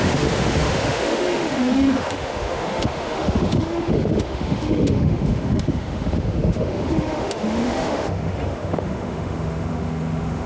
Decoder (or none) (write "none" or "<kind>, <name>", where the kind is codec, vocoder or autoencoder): autoencoder, DAC-VAE